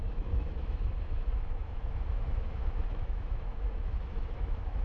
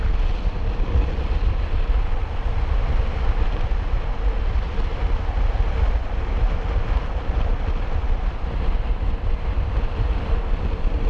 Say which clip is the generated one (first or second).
first